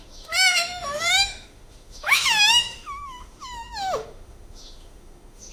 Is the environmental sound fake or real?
fake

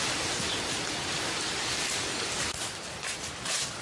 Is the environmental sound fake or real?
real